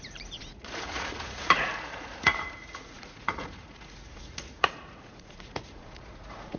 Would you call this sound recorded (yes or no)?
no